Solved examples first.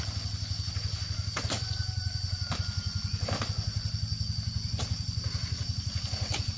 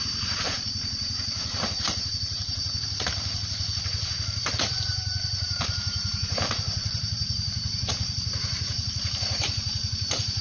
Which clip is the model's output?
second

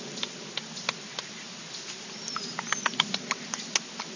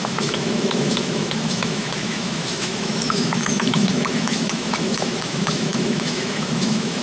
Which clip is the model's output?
second